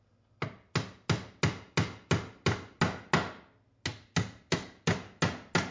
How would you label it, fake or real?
real